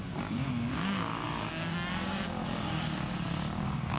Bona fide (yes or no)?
no